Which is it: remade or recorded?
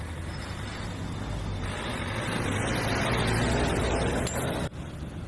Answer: recorded